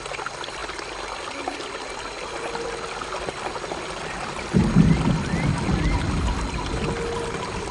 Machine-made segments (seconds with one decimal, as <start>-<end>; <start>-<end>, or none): none